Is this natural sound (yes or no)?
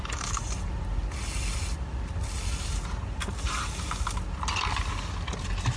yes